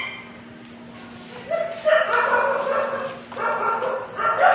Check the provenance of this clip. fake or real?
real